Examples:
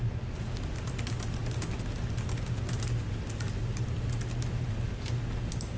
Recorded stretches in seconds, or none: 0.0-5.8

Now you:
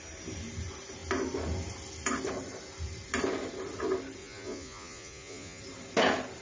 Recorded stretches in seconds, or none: 0.0-4.2; 5.6-6.4

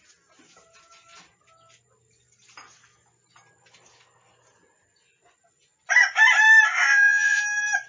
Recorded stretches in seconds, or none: 0.0-6.9; 7.4-7.9

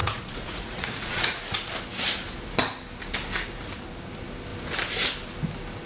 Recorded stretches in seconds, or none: 1.4-5.9

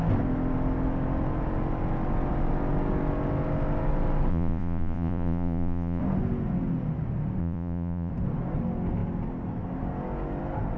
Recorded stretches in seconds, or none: 0.0-4.3; 6.0-7.4; 8.1-10.8

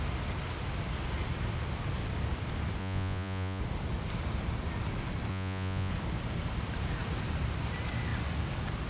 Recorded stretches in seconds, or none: 0.0-2.8; 3.6-5.3; 5.9-8.9